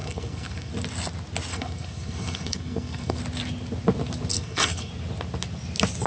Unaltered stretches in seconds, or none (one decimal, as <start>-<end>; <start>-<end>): 0.7-1.5; 3.2-4.3; 4.9-6.1